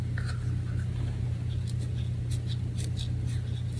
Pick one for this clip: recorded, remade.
recorded